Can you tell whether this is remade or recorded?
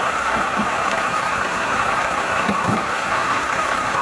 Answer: remade